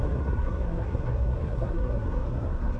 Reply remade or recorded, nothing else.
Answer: remade